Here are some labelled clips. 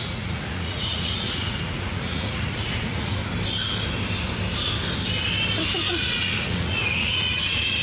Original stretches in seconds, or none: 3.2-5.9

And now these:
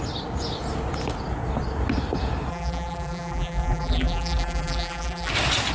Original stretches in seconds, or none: 0.0-2.5; 5.3-5.7

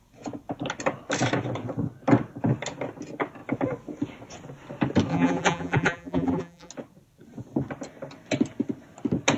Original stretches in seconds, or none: 0.0-5.1; 6.7-9.4

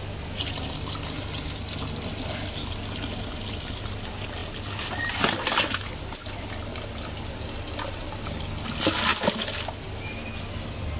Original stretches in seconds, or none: 0.0-11.0